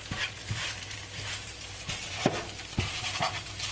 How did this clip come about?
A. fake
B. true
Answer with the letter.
A